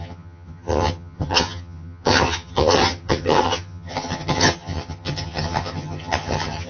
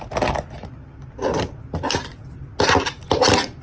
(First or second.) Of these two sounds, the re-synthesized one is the first